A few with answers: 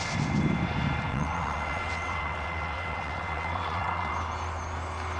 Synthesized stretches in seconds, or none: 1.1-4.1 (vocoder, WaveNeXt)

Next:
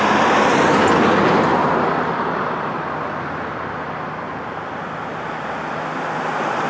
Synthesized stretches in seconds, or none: none

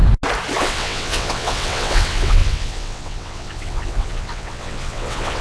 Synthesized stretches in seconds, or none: 0.6-5.4 (vocoder, WaveNeXt)

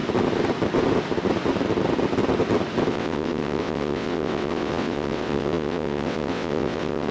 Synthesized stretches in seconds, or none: 2.9-7.1 (vocoder, WaveNeXt)

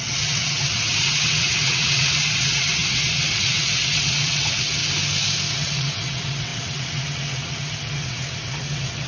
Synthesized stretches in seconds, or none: 0.0-4.8 (vocoder, WaveNeXt); 5.5-9.1